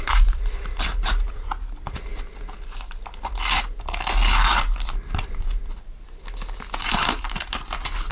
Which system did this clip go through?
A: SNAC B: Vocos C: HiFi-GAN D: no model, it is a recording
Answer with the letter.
D